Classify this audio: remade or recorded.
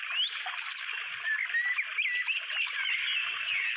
recorded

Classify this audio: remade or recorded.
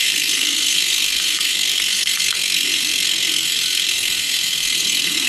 remade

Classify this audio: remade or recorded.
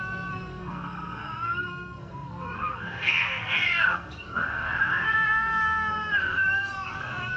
remade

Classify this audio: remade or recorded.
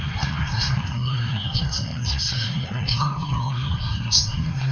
remade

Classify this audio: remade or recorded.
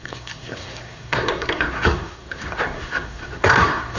remade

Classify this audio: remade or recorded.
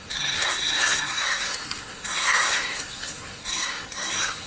remade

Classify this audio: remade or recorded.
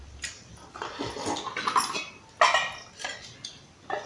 recorded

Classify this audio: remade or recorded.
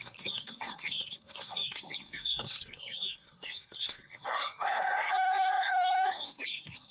remade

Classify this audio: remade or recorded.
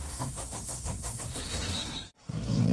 remade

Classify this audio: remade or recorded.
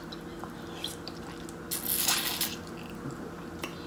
recorded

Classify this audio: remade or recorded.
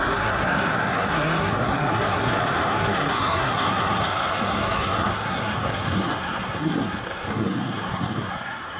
remade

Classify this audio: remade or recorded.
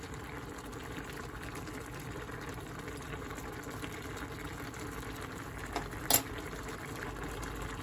recorded